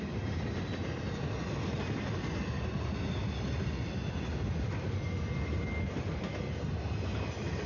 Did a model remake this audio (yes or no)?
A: no